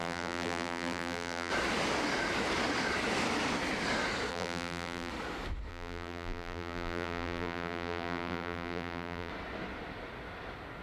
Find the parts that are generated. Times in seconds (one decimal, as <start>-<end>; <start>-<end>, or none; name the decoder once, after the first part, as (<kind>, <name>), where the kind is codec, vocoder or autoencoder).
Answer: 0.0-1.5 (vocoder, BigVGAN v2); 4.3-5.1; 5.7-9.3